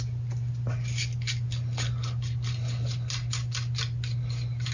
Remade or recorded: recorded